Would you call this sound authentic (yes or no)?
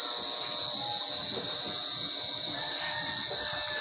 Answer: yes